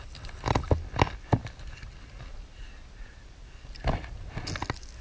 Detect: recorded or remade recorded